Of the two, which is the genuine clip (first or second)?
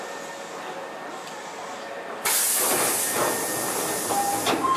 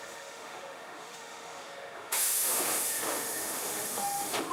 first